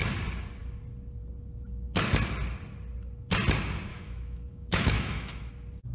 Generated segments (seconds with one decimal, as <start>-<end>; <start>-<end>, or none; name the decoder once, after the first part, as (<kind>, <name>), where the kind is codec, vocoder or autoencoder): 3.9-5.5 (autoencoder, DAC-VAE)

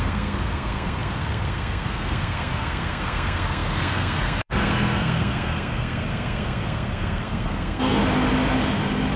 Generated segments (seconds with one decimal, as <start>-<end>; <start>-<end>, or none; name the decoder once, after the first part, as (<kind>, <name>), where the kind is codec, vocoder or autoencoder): 0.0-8.0 (codec, SNAC)

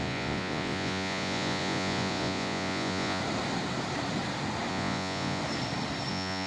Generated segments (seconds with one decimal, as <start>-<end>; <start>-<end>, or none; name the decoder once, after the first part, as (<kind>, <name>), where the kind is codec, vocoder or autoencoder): 0.0-3.2 (vocoder, Vocos); 4.7-5.4; 6.1-6.5